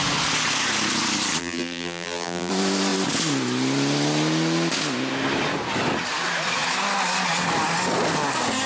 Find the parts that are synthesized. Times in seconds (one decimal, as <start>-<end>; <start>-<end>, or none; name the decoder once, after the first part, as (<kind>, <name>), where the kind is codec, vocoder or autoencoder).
1.4-2.5 (vocoder, BigVGAN v2)